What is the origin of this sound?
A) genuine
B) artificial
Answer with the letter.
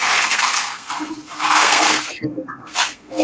B